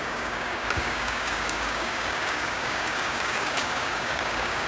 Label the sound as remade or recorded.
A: remade